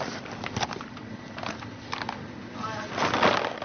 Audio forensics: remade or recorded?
recorded